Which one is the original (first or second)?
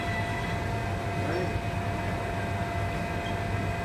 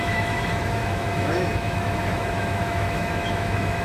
first